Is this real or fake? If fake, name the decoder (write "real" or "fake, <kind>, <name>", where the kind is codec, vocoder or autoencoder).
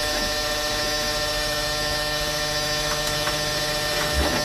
fake, autoencoder, DAC-VAE